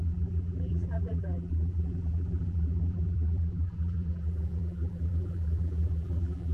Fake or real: fake